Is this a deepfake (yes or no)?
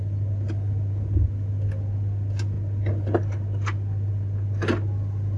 no